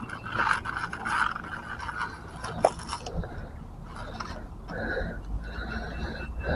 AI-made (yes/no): no